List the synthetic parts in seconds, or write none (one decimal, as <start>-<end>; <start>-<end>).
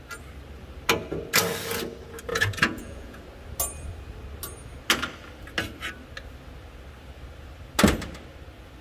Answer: 2.3-3.2